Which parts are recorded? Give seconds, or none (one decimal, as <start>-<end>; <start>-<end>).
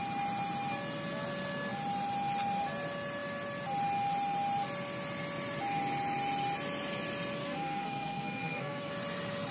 0.0-7.4; 8.9-9.5